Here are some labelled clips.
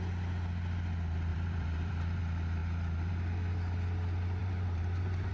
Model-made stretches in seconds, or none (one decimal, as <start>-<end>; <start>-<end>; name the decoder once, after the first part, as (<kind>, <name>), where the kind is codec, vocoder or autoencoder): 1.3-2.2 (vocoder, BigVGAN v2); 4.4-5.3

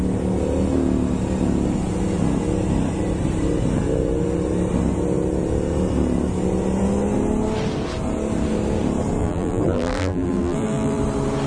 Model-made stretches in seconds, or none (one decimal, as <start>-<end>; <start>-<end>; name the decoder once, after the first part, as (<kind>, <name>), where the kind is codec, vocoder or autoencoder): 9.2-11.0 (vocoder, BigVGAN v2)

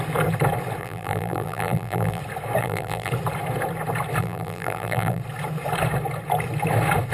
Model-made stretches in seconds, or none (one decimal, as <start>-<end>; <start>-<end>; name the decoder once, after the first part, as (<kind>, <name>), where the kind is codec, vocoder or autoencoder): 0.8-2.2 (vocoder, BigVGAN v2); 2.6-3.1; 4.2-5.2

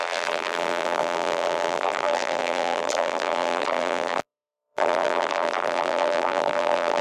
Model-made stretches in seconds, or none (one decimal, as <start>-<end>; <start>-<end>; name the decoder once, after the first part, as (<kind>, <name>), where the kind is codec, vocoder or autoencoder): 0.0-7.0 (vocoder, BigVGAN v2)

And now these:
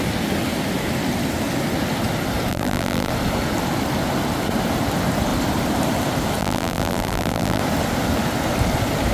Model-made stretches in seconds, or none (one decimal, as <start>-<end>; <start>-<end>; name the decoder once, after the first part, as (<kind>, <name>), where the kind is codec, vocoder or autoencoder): 2.5-3.1 (vocoder, BigVGAN v2); 6.4-7.6